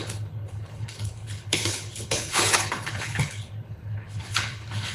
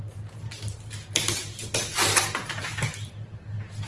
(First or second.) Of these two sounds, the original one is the second